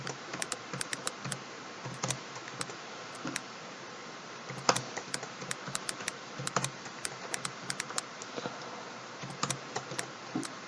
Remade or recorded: remade